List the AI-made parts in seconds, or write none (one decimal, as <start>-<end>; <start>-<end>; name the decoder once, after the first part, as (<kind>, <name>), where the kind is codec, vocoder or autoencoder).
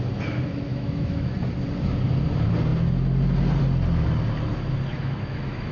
0.7-1.3 (autoencoder, DAC-VAE); 4.9-5.7